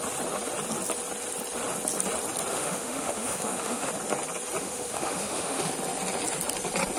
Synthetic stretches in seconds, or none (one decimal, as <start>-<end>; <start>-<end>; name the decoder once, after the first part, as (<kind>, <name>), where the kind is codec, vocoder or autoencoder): 2.5-3.9 (autoencoder, DAC-VAE); 4.6-5.7